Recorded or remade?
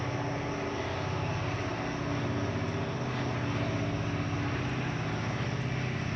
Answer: recorded